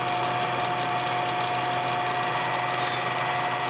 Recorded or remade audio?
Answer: recorded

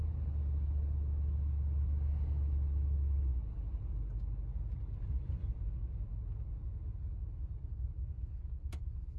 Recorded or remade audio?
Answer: recorded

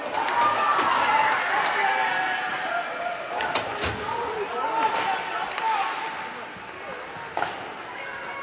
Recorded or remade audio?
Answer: recorded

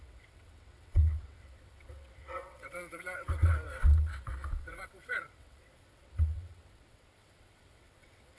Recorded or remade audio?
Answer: remade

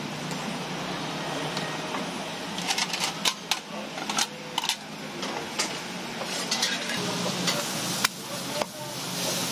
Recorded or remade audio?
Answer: recorded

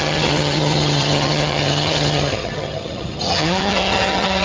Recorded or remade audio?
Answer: remade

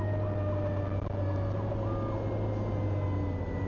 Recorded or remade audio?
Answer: recorded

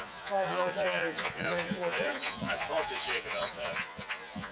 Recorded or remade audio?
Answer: remade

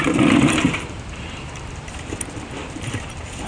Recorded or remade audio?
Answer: remade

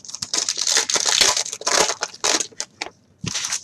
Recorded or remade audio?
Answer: recorded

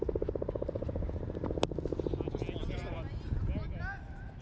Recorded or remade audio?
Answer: recorded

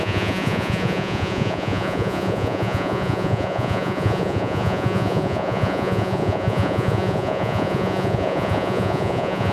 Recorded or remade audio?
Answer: remade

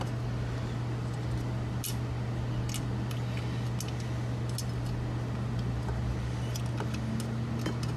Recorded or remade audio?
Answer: recorded